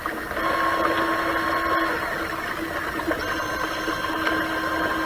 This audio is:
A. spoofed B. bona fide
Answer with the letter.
B